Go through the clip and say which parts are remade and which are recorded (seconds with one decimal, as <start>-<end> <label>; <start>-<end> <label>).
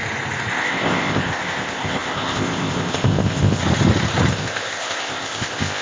0.0-0.5 recorded; 0.5-3.6 remade; 3.6-4.3 recorded; 4.3-5.8 remade